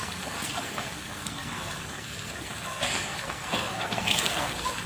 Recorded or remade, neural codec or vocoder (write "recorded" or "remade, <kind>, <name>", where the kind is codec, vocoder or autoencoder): remade, codec, SNAC